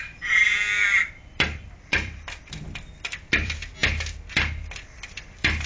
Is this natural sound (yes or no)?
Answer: no